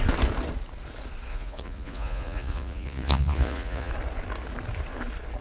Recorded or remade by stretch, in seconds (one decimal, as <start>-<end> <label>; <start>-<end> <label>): 0.0-1.3 recorded; 1.3-3.9 remade; 3.9-5.4 recorded